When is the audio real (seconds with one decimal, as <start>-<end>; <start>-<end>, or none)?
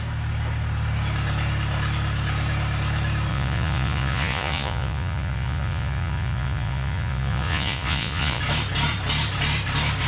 0.0-3.3; 8.4-10.1